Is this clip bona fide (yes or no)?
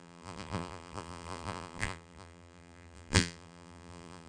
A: no